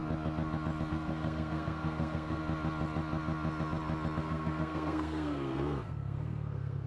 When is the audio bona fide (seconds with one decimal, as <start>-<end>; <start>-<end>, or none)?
0.0-0.9; 2.4-4.2